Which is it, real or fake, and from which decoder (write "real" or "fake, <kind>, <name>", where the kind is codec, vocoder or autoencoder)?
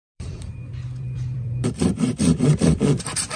fake, vocoder, BigVGAN v2